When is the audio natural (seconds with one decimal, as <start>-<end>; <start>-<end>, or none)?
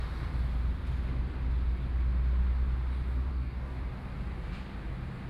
0.0-3.3; 3.8-5.3